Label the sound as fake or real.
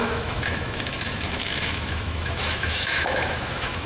fake